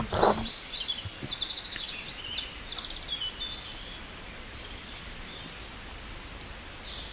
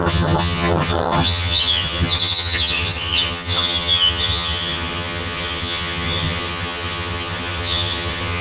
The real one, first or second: first